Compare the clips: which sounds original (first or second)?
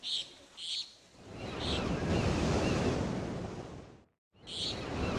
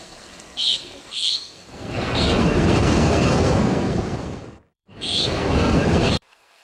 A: first